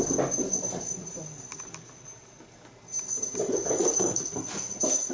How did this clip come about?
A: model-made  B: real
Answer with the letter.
B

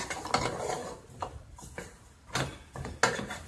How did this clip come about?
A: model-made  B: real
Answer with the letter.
B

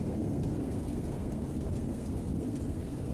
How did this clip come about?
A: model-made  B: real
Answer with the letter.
A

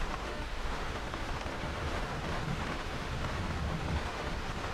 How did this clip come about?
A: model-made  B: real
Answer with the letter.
A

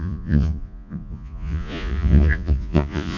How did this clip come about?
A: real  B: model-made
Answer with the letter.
B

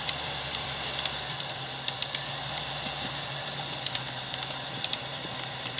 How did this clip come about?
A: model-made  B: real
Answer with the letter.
A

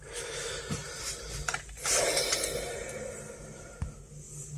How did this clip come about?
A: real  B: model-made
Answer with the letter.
A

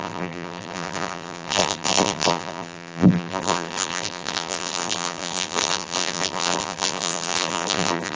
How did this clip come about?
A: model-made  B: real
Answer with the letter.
A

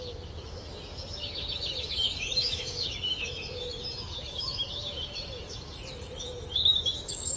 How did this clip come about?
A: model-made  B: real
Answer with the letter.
A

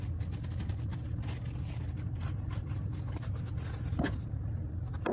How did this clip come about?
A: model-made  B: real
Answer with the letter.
B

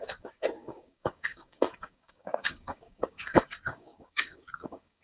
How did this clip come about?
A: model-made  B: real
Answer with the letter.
A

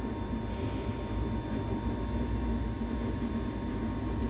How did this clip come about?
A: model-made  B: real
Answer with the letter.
B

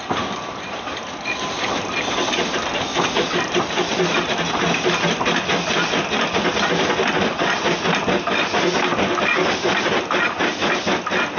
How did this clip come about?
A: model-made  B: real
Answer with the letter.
B